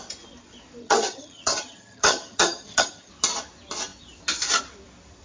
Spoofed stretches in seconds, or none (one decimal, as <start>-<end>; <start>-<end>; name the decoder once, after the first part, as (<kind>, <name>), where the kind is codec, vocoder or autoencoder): 0.8-3.1 (vocoder, HiFi-GAN)